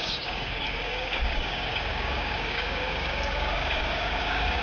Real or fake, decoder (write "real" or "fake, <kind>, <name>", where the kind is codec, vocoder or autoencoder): fake, codec, DAC